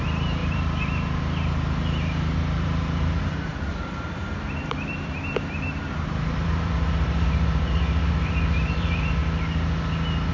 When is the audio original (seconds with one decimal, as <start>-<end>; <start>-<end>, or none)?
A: 9.2-10.3